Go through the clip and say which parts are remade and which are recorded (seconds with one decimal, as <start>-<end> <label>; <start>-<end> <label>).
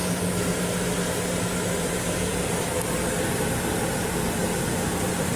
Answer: 0.0-1.8 recorded; 1.8-2.7 remade; 2.7-4.4 recorded; 4.4-5.4 remade